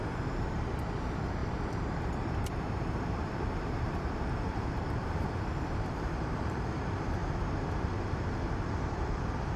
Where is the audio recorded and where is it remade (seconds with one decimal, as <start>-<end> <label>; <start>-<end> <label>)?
0.0-7.2 remade; 7.2-9.6 recorded